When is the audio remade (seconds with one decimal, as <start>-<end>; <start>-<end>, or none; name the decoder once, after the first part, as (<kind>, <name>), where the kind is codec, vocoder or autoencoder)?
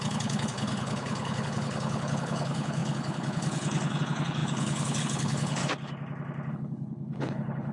0.0-5.6 (codec, HILCodec); 6.5-7.7